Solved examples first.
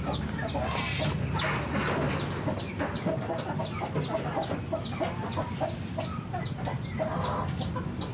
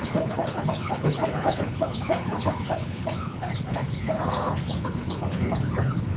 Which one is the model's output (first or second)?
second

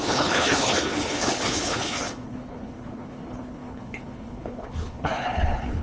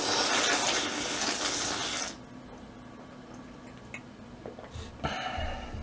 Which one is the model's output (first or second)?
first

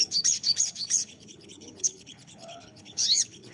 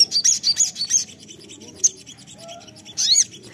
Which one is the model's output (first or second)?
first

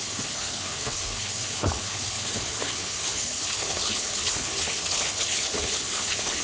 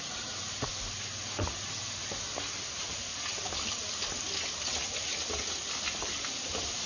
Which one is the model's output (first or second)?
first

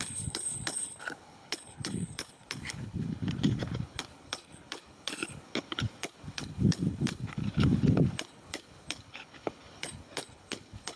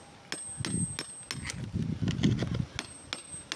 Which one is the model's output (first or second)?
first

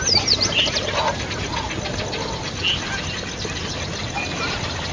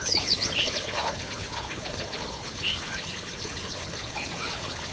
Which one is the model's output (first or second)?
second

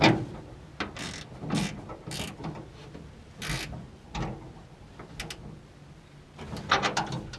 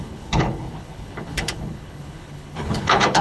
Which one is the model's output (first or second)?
second